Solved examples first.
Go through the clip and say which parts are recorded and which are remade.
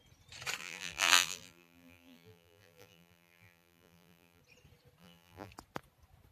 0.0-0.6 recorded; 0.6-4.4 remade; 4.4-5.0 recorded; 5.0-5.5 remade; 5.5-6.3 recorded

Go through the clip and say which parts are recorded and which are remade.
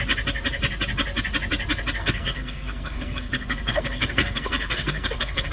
0.0-2.0 recorded; 2.0-5.5 remade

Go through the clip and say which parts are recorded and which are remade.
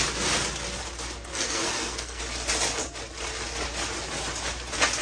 0.0-1.3 recorded; 1.3-2.2 remade; 2.2-5.0 recorded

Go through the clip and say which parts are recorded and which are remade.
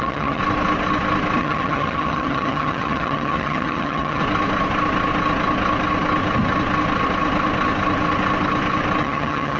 0.0-0.4 remade; 0.4-1.4 recorded; 1.4-4.2 remade; 4.2-9.0 recorded; 9.0-9.6 remade